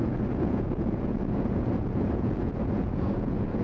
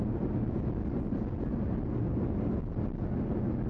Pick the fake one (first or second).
first